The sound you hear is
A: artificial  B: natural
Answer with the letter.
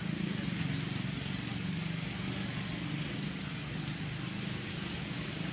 B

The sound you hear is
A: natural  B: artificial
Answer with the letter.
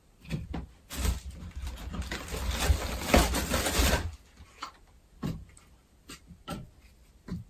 A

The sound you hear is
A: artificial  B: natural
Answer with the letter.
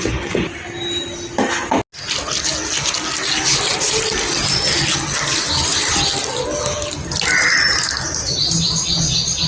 B